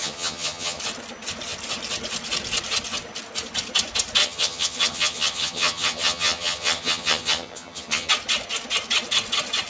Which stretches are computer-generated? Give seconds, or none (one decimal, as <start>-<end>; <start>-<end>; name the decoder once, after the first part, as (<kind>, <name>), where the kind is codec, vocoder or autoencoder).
0.0-0.8 (vocoder, HiFi-GAN); 4.2-8.1